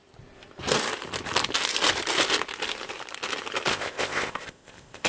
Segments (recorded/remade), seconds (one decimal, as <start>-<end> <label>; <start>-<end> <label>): 0.0-3.7 recorded; 3.7-5.1 remade